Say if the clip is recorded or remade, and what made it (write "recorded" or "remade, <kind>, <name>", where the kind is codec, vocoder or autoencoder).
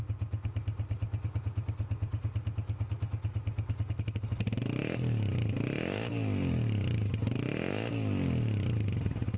recorded